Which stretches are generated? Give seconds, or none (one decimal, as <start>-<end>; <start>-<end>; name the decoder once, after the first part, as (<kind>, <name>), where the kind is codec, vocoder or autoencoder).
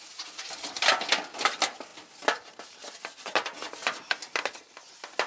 none